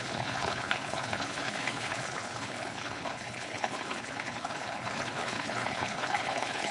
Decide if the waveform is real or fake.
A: fake